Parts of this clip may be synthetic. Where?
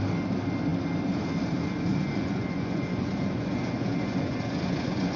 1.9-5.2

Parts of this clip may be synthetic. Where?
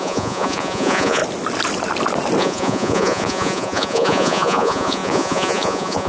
0.0-1.2; 2.4-6.1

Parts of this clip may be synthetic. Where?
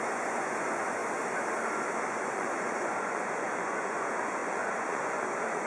0.0-1.0; 2.1-5.7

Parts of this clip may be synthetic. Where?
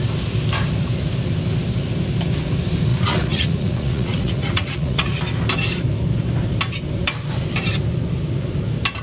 2.9-5.2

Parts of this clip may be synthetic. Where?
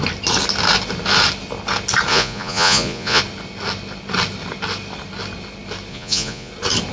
2.1-3.2; 5.9-6.5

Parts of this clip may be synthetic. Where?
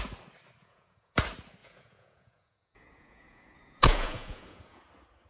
0.6-1.2; 1.6-4.8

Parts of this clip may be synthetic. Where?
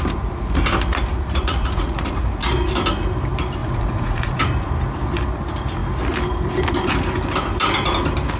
1.1-2.3; 3.6-4.4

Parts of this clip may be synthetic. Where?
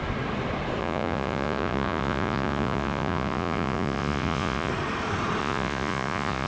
0.8-4.7; 5.4-6.5